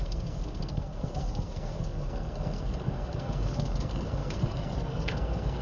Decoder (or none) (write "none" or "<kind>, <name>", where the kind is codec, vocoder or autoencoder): codec, SNAC